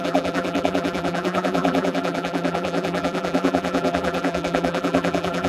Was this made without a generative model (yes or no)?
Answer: no